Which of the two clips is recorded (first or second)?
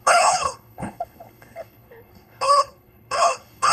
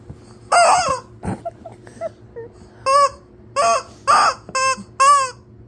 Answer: second